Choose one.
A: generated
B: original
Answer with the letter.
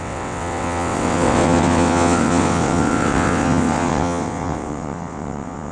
A